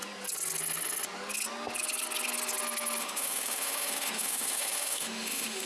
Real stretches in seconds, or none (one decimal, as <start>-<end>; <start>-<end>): 0.0-3.0